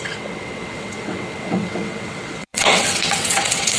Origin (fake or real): fake